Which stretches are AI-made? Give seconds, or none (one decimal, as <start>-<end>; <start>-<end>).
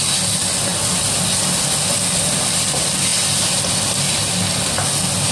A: none